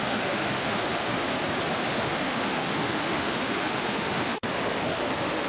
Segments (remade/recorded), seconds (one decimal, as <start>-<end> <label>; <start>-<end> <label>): 0.0-1.3 remade; 1.3-1.9 recorded; 1.9-5.5 remade